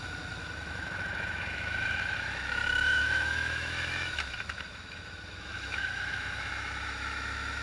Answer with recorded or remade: remade